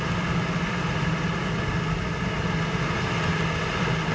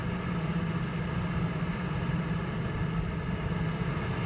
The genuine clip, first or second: first